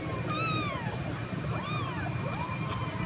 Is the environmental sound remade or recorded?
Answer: recorded